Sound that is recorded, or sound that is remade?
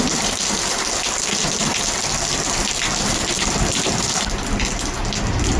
recorded